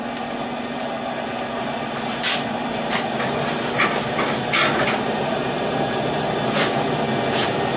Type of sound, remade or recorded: recorded